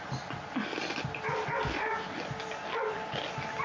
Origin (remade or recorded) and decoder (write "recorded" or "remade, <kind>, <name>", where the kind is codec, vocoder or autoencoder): recorded